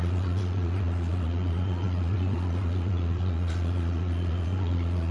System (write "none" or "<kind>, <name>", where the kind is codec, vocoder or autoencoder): vocoder, Vocos